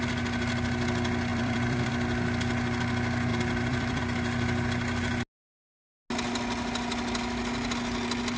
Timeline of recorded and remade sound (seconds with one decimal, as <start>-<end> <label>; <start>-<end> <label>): 0.0-1.3 recorded; 1.3-1.9 remade; 1.9-3.3 recorded; 3.3-4.0 remade; 4.0-8.4 recorded